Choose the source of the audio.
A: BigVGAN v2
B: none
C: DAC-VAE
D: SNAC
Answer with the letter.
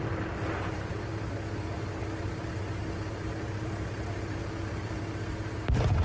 A